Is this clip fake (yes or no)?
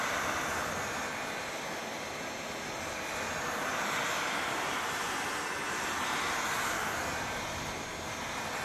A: no